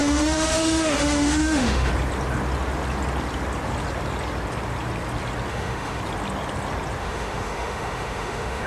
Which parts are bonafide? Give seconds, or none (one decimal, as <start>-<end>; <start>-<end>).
1.9-5.5; 6.0-7.0